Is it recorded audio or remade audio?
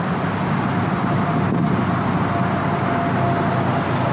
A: recorded